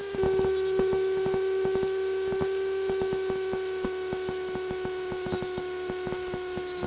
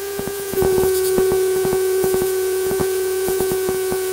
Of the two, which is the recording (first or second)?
first